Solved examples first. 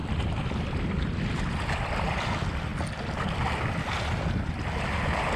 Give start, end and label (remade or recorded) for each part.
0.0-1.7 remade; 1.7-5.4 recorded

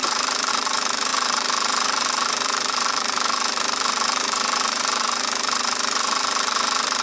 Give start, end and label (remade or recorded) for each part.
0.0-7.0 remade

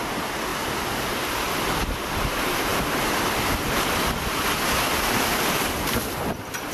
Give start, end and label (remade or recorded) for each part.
0.0-6.7 recorded

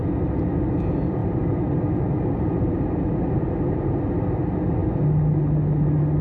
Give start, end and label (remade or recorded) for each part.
0.0-1.2 recorded; 1.2-4.0 remade; 4.0-6.2 recorded